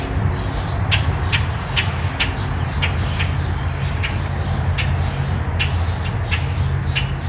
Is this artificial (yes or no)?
no